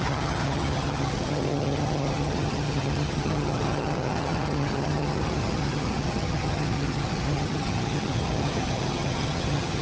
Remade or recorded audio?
remade